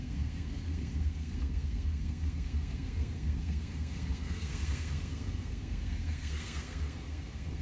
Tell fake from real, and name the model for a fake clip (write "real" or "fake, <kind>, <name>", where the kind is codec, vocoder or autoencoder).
fake, codec, SNAC